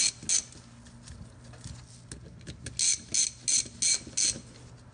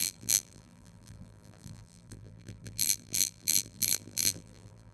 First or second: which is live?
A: first